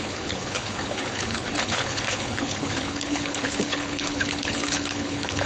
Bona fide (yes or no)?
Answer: no